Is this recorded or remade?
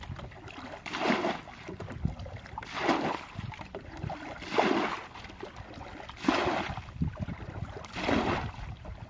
recorded